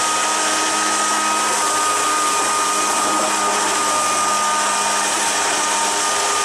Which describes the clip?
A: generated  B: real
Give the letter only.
B